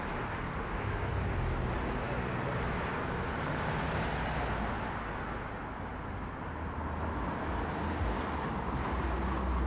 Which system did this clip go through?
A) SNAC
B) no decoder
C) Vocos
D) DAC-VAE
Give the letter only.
B